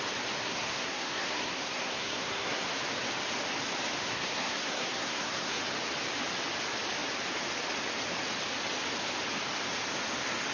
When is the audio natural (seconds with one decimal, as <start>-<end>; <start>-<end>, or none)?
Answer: 0.0-0.4; 2.7-4.0; 5.6-10.5